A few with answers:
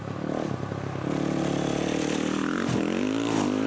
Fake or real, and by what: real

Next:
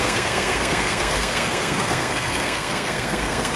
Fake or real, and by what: fake, codec, SNAC